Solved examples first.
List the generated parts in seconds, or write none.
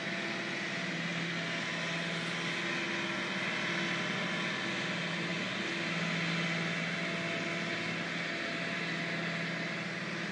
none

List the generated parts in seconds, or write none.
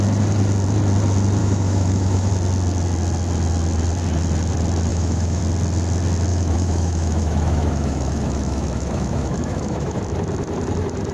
1.4-2.3 (autoencoder, DAC-VAE); 4.9-5.4; 6.3-10.0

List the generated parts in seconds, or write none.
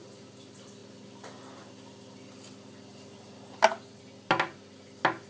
none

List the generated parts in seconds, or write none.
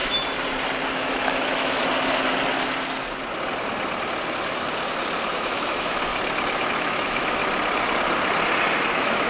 0.9-1.8 (autoencoder, DAC-VAE); 5.3-6.1; 6.7-7.4; 8.9-9.3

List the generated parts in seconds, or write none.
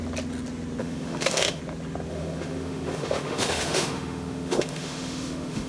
0.8-1.6 (autoencoder, DAC-VAE); 2.1-5.7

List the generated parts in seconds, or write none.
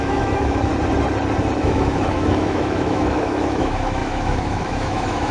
0.0-0.7 (autoencoder, DAC-VAE); 1.6-5.3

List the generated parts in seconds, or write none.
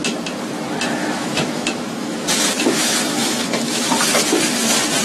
1.0-4.0 (autoencoder, DAC-VAE)